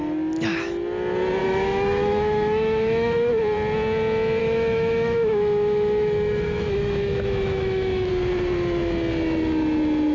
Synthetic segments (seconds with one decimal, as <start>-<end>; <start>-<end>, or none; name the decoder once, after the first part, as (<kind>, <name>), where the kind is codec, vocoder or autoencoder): 1.4-3.3 (autoencoder, DAC-VAE); 4.4-8.1